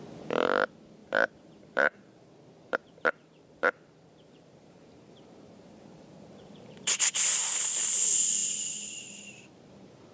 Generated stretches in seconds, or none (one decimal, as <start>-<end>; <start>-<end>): 1.0-2.3; 2.8-7.2